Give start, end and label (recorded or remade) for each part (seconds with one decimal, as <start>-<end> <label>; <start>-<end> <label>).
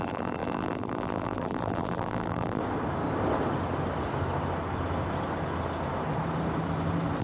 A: 0.0-2.6 remade; 2.6-7.2 recorded